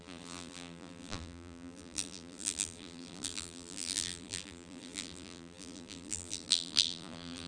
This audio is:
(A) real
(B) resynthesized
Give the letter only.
B